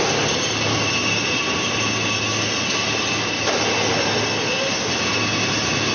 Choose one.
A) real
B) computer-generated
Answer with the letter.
A